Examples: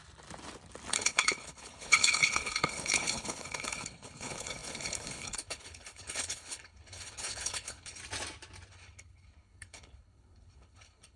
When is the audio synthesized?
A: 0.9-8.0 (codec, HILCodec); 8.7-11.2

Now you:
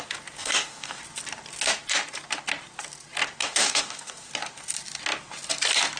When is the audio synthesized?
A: 0.4-1.0 (codec, DAC); 3.4-4.3

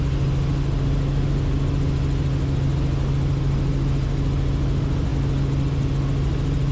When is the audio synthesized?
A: none

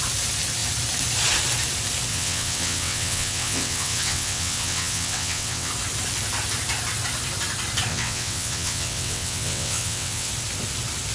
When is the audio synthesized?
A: 2.1-5.7 (vocoder, WaveNeXt); 7.9-10.3

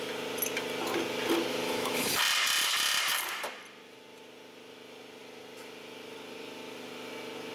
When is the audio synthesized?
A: 1.5-2.1 (autoencoder, DAC-VAE)